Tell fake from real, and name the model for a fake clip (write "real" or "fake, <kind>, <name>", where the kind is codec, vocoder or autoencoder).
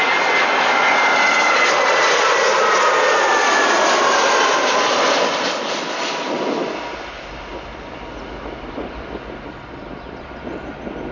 real